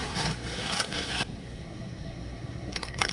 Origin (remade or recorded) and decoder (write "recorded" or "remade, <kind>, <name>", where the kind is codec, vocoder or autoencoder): remade, codec, SNAC